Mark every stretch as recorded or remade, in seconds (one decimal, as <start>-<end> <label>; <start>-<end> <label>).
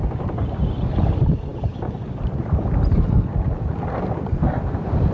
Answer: 0.0-5.1 recorded